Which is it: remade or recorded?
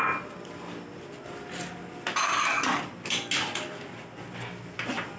recorded